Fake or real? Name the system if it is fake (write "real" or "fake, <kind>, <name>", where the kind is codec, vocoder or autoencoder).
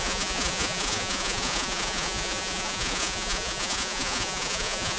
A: fake, vocoder, Vocos